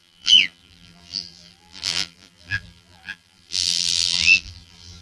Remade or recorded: remade